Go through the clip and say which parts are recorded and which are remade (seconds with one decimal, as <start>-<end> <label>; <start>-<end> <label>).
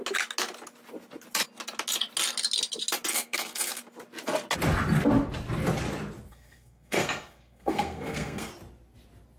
0.0-3.1 recorded; 3.1-3.8 remade; 3.8-6.3 recorded; 6.3-8.5 remade; 8.5-9.4 recorded